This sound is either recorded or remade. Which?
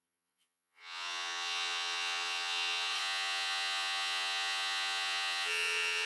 remade